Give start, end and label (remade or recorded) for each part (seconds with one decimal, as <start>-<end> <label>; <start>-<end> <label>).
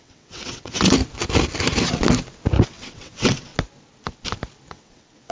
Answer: 0.0-1.0 remade; 1.0-2.6 recorded; 2.6-3.5 remade; 3.5-4.7 recorded; 4.7-5.3 remade